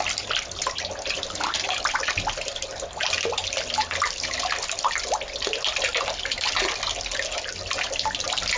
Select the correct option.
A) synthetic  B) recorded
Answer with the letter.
B